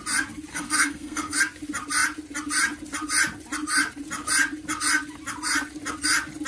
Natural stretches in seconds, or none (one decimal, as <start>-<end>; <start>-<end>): 0.0-0.5; 1.4-6.5